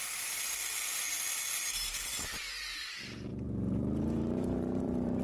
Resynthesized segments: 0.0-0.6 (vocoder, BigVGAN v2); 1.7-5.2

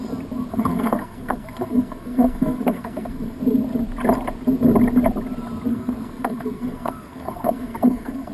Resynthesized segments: 0.5-3.4 (codec, SNAC); 5.7-8.3

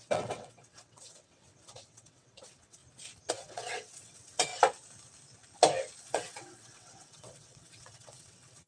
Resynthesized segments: 0.0-2.8 (vocoder, WaveNeXt); 3.3-4.5; 6.0-8.7

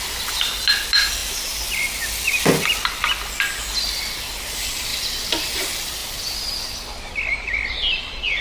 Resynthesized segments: none

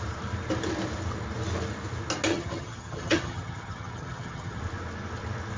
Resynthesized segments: 2.3-4.6 (vocoder, HiFi-GAN)

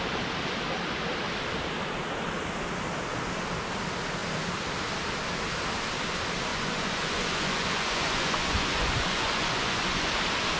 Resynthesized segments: 6.5-10.1 (vocoder, Vocos)